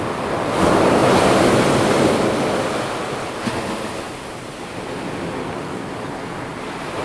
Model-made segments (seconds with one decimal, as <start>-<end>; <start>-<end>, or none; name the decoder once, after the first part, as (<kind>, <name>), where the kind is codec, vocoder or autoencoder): 5.4-5.9 (codec, SNAC)